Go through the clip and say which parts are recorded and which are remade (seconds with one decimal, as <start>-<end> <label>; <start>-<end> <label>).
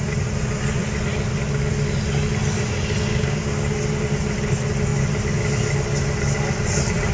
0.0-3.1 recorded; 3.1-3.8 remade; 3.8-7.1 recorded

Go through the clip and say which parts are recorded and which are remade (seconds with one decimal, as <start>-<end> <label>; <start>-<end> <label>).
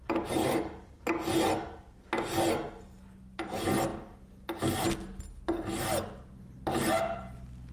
0.0-7.7 recorded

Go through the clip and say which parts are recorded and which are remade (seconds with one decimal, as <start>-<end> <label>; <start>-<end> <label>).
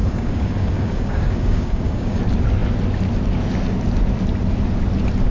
0.0-2.2 remade; 2.2-5.3 recorded